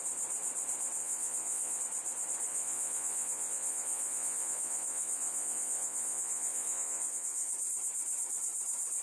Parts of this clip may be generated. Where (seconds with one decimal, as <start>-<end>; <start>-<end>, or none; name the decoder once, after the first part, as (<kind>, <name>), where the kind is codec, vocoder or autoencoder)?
1.0-1.8 (vocoder, Vocos); 2.5-7.5